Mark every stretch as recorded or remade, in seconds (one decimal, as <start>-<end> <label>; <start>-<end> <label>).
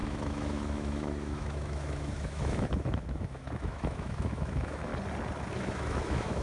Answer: 0.0-4.9 remade; 4.9-5.5 recorded; 5.5-6.4 remade